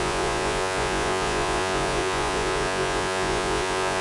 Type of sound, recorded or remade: remade